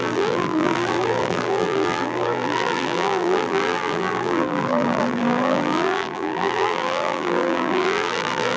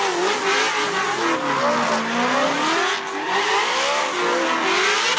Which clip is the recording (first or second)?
second